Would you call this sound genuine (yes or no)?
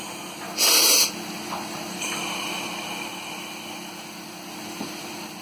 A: yes